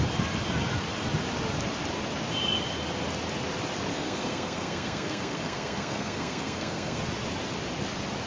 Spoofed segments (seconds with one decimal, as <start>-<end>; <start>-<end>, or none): 3.9-7.0